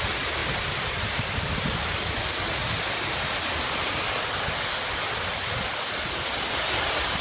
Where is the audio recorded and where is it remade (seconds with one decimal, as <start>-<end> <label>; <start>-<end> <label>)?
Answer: 0.0-7.2 recorded